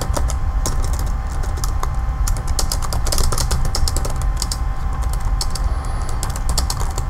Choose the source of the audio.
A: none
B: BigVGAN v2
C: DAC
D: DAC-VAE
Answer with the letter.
A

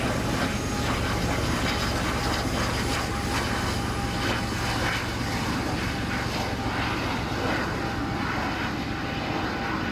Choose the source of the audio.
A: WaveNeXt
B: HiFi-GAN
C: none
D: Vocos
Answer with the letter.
C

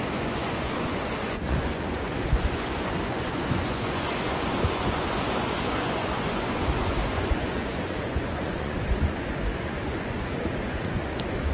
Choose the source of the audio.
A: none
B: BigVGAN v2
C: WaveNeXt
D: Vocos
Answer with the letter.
D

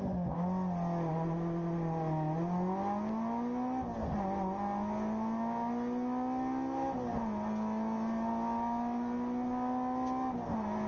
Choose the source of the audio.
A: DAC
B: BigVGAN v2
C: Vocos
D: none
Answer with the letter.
D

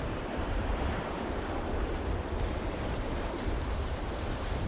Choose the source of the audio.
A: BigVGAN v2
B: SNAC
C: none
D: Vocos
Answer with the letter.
A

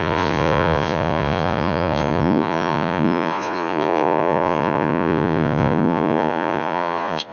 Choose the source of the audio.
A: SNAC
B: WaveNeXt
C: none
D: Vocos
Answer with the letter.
D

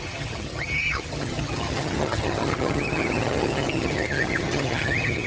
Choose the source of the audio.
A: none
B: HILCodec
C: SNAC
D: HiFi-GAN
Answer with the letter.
D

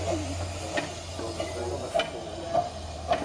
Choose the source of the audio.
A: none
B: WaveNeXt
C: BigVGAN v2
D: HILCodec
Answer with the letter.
A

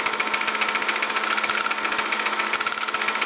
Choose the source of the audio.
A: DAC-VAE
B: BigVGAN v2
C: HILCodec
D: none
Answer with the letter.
D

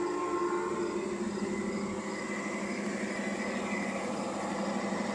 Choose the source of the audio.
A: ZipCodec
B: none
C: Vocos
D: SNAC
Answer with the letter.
B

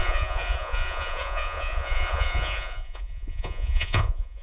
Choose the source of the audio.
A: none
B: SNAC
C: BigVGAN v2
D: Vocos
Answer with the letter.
D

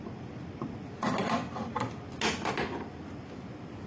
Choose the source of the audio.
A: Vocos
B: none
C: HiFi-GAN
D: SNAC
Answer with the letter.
B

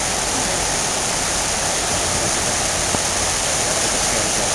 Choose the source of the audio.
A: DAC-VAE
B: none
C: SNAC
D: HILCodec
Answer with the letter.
B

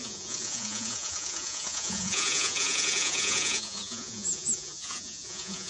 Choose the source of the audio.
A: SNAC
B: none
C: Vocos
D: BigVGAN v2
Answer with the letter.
C